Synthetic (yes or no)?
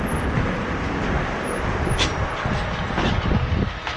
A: no